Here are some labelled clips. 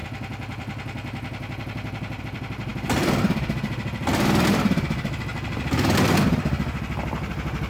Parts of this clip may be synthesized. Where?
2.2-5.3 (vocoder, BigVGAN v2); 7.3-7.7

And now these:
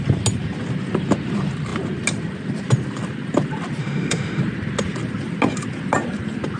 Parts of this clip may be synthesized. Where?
3.8-4.4 (autoencoder, DAC-VAE)

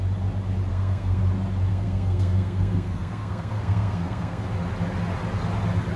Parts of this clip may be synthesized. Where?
0.7-1.2 (codec, SNAC); 1.7-4.4

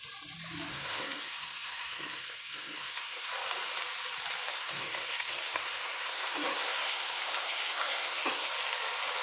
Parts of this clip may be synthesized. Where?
0.7-3.3 (codec, SNAC); 4.5-8.5

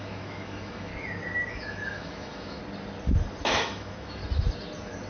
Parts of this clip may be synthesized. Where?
0.0-0.9 (autoencoder, DAC-VAE); 1.5-2.6; 3.4-4.2

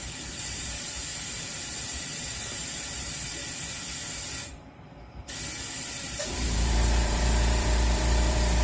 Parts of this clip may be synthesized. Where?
0.0-1.0 (vocoder, BigVGAN v2); 1.9-2.3; 2.9-3.4; 5.7-8.6

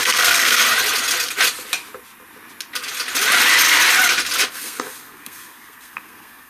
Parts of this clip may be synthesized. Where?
0.0-0.6 (codec, SNAC); 4.5-6.5

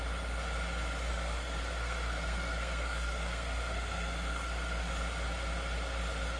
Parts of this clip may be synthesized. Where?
1.1-4.9 (codec, SNAC)